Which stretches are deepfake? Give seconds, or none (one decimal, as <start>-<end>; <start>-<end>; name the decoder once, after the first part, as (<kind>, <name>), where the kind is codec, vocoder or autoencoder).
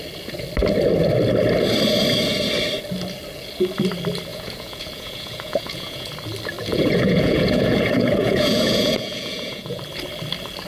4.3-6.1 (vocoder, Vocos); 6.6-9.8